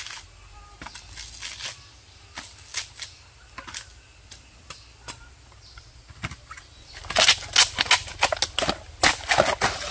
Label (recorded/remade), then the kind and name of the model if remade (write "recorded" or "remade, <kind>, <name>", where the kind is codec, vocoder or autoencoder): recorded